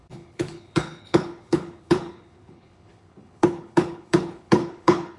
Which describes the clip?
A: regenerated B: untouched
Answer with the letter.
A